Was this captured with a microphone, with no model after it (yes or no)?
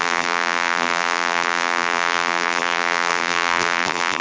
no